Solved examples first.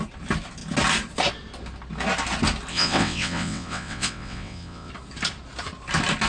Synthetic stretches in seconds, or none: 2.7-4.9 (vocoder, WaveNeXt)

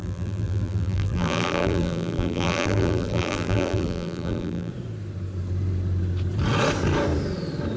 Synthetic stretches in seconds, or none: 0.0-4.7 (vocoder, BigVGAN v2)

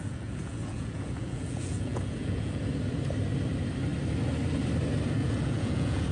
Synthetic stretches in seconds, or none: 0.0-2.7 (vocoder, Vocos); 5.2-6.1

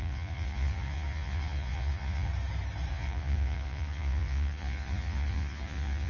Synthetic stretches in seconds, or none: 0.0-2.3 (vocoder, Vocos); 2.9-6.1

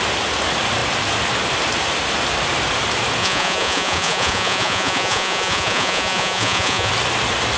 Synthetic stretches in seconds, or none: 3.2-6.9 (vocoder, Vocos)

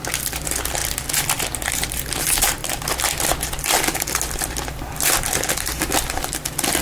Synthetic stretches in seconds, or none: none